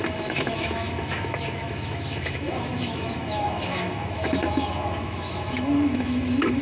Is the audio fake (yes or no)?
yes